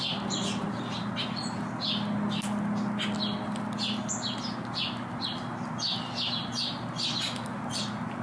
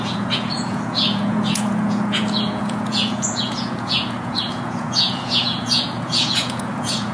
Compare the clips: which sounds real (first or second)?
first